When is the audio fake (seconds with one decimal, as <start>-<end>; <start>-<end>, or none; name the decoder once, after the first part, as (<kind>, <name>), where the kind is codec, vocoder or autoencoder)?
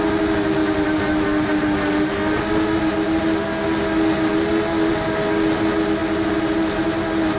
none